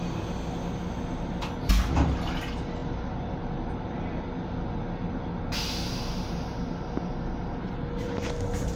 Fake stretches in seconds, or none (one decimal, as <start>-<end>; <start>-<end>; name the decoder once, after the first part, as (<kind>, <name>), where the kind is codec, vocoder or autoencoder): none